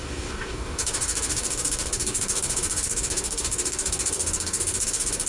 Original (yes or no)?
no